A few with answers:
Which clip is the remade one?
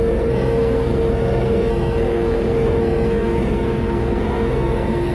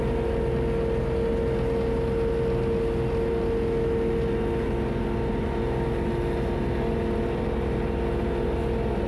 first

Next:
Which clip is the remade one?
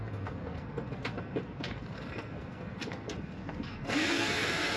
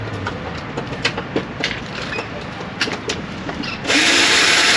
first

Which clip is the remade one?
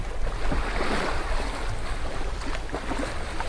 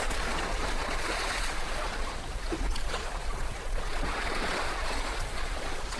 second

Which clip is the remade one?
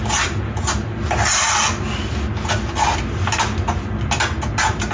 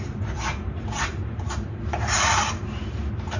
second